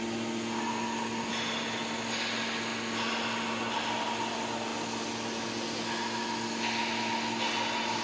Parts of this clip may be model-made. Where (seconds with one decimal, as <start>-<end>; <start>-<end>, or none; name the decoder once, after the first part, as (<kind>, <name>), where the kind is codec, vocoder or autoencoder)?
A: none